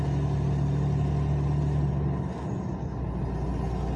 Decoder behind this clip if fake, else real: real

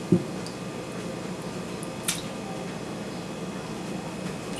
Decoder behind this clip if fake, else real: real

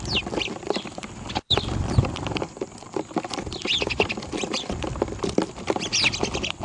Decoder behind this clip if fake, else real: fake, vocoder, BigVGAN v2